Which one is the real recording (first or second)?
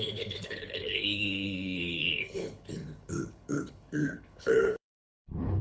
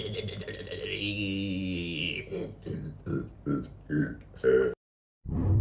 second